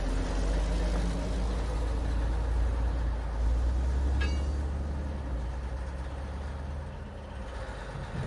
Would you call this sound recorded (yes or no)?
yes